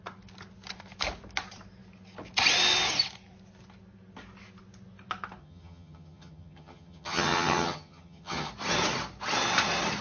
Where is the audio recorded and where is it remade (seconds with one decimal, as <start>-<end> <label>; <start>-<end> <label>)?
0.0-5.4 recorded; 5.4-8.5 remade; 8.5-10.0 recorded

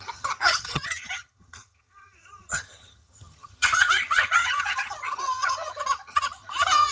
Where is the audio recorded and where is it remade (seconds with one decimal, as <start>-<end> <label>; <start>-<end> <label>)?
0.0-6.9 remade

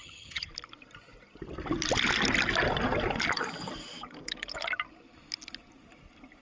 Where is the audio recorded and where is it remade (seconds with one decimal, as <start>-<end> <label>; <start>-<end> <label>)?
0.0-0.5 remade; 0.5-6.4 recorded

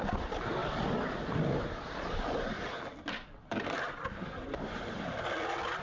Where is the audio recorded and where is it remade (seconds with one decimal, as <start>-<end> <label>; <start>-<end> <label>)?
0.0-5.8 recorded

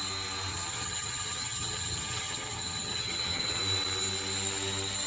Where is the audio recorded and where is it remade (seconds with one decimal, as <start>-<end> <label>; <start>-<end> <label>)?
0.0-0.5 recorded; 0.5-3.6 remade; 3.6-5.1 recorded

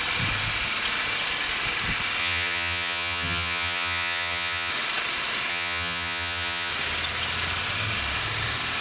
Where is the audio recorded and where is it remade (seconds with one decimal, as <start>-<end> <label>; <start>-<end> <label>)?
0.0-2.2 recorded; 2.2-4.7 remade; 4.7-5.5 recorded; 5.5-6.7 remade; 6.7-8.8 recorded